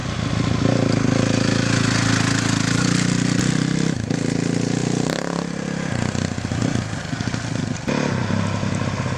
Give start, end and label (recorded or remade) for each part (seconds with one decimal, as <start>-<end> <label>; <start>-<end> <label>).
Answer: 0.0-9.2 recorded